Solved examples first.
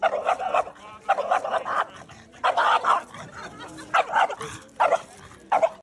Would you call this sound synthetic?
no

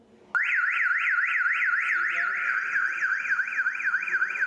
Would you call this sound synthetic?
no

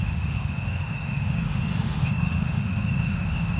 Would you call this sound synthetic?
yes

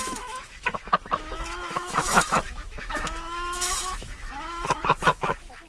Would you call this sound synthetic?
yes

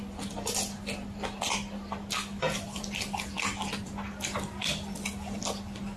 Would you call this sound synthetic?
no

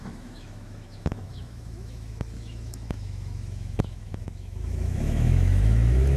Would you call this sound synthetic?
yes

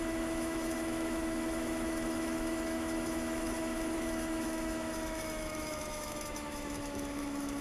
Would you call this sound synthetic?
yes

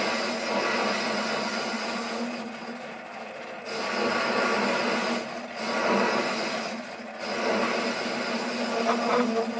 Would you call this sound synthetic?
no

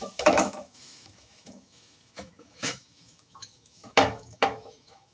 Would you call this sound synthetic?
yes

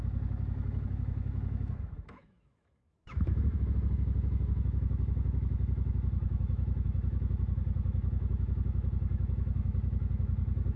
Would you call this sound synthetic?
yes